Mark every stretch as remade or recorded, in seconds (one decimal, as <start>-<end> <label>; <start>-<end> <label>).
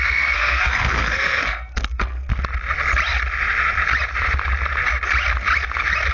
0.0-2.3 remade; 2.3-6.1 recorded